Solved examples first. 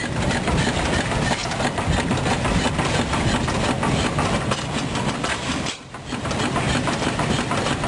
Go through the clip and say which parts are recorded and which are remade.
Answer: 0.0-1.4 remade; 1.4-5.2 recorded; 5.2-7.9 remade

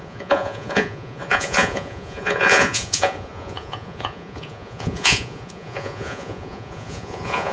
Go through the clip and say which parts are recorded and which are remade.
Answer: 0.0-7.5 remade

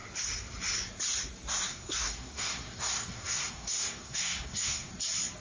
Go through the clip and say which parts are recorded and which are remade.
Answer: 0.0-1.7 recorded; 1.7-4.9 remade; 4.9-5.4 recorded

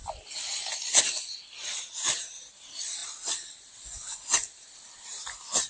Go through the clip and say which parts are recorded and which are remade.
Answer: 0.0-5.7 recorded

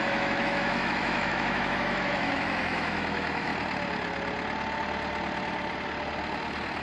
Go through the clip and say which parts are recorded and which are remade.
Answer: 0.0-3.5 remade; 3.5-6.8 recorded

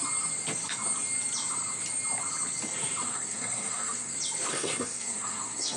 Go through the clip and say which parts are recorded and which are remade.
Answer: 0.0-3.1 recorded; 3.1-4.1 remade; 4.1-4.5 recorded; 4.5-5.8 remade